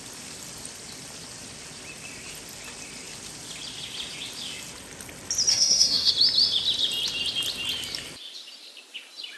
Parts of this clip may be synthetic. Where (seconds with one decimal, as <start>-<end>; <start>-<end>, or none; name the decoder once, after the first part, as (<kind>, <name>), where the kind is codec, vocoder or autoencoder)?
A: 5.5-6.1 (codec, SNAC)